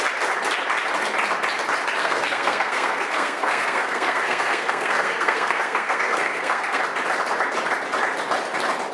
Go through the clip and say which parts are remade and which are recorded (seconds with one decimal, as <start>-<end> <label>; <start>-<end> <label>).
0.0-2.0 recorded; 2.0-6.8 remade; 6.8-8.9 recorded